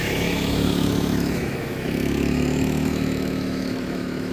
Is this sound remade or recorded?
remade